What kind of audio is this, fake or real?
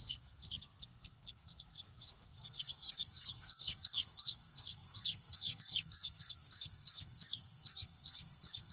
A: fake